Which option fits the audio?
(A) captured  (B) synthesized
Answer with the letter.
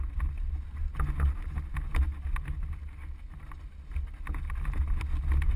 A